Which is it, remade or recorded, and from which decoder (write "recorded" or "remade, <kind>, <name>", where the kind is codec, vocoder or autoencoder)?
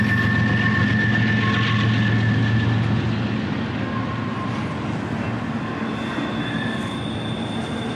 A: recorded